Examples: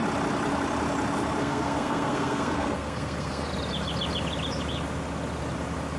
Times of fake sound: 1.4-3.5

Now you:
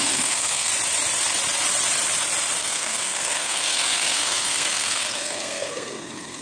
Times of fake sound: 0.0-0.7; 2.6-6.4

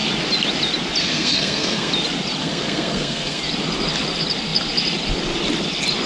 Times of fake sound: 1.0-1.9; 2.4-3.4